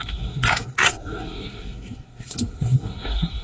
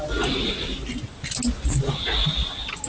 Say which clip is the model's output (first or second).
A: first